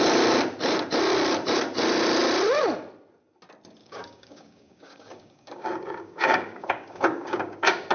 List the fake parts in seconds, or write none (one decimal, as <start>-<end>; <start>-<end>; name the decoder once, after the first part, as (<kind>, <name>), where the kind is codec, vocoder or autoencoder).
3.8-7.9 (codec, DAC)